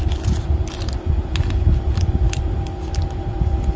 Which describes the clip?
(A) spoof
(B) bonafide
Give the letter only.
B